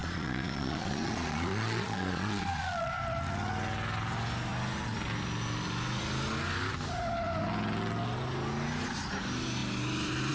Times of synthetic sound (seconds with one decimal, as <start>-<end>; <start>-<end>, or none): 0.0-2.9